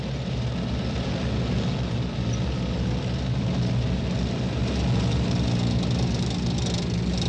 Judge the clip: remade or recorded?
recorded